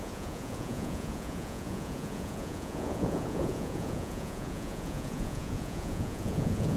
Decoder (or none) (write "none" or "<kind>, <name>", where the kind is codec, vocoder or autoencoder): vocoder, Vocos